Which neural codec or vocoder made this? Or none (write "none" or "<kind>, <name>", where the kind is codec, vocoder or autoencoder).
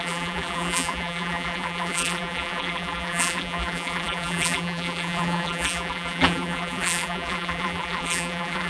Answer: vocoder, BigVGAN v2